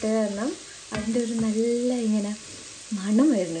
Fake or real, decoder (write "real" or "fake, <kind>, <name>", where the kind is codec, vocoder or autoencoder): real